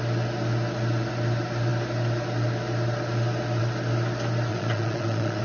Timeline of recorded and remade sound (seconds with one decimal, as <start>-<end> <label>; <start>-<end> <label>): 0.0-4.5 recorded; 4.5-5.4 remade